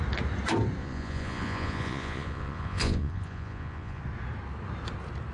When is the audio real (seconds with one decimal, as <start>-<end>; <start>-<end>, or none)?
0.0-0.8; 4.0-5.3